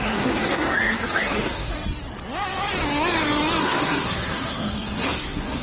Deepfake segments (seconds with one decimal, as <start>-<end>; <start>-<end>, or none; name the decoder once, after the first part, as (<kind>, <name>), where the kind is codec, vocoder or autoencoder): 0.0-1.7 (codec, SNAC); 3.6-5.6